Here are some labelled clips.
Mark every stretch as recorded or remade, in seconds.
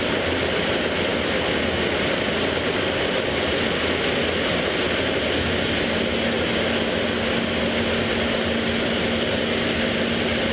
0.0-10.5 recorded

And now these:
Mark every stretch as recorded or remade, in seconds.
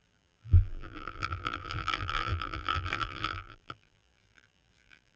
0.0-5.2 remade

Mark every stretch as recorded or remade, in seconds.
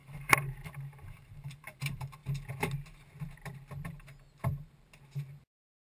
0.0-2.2 remade; 2.2-5.9 recorded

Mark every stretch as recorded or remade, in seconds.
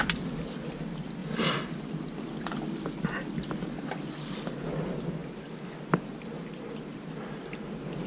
0.0-1.2 recorded; 1.2-2.2 remade; 2.2-8.1 recorded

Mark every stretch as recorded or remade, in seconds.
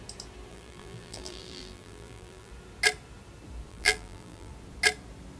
0.0-0.5 recorded; 0.5-2.5 remade; 2.5-3.7 recorded; 3.7-4.5 remade; 4.5-5.4 recorded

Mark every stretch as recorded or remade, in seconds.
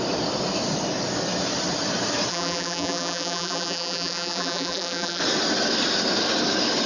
0.0-2.3 recorded; 2.3-5.2 remade; 5.2-6.9 recorded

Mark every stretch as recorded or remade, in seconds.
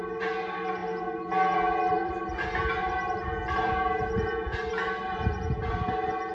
0.0-0.8 remade; 0.8-1.9 recorded; 1.9-6.3 remade